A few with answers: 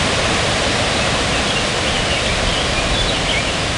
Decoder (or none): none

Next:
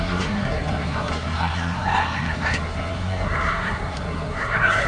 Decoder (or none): codec, SNAC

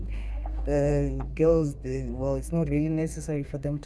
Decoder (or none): codec, SNAC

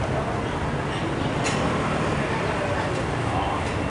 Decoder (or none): none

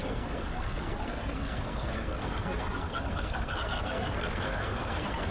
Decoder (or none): codec, SNAC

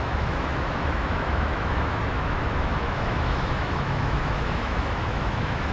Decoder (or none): autoencoder, DAC-VAE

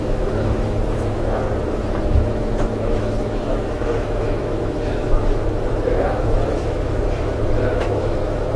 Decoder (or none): autoencoder, DAC-VAE